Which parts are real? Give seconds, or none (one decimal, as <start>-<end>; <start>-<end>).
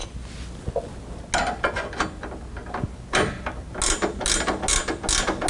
0.0-5.5